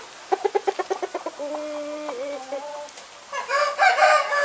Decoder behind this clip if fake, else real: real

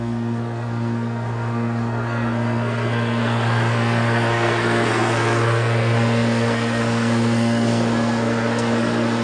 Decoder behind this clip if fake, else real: fake, codec, SNAC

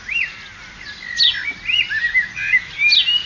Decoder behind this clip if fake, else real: real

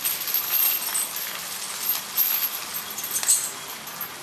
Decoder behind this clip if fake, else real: real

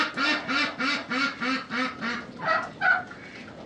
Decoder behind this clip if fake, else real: real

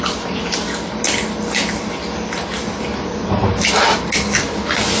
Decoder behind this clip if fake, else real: real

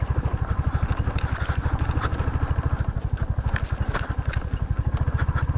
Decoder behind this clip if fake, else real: real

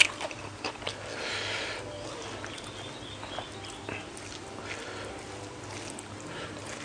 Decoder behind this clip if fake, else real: real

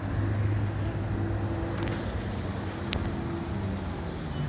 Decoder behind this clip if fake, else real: real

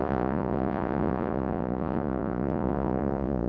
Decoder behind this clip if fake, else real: fake, vocoder, Vocos